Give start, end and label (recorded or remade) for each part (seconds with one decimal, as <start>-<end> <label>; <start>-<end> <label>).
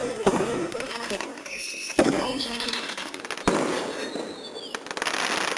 0.0-3.2 remade; 3.2-5.6 recorded